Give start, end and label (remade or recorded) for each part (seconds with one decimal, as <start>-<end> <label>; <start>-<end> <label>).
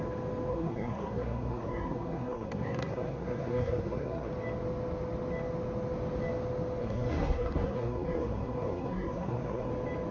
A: 0.0-0.5 recorded; 0.5-4.3 remade; 4.3-6.8 recorded; 6.8-9.7 remade; 9.7-10.1 recorded